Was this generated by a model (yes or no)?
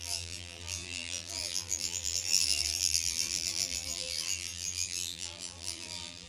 yes